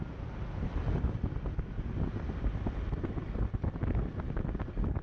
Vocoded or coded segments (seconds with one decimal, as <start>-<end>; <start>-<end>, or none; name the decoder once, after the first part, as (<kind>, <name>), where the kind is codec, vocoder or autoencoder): none